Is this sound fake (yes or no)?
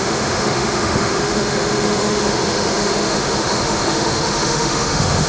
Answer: yes